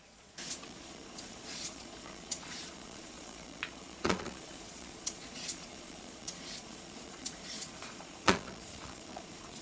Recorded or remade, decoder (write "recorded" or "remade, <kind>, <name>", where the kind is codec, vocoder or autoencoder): remade, vocoder, Vocos